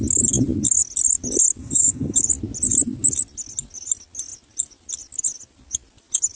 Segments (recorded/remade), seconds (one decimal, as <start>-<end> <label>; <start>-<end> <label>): 0.0-1.6 recorded; 1.6-2.2 remade; 2.2-6.4 recorded